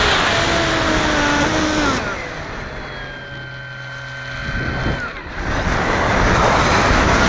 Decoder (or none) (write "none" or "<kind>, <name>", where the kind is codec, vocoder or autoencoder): none